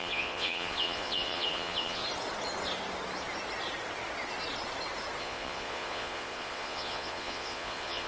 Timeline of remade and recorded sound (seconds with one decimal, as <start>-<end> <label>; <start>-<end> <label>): 0.0-2.0 remade; 2.0-5.2 recorded; 5.2-8.1 remade